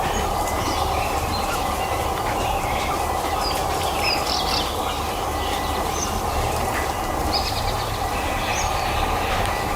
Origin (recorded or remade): remade